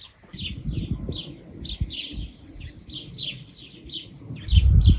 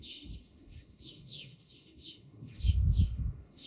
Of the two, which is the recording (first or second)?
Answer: first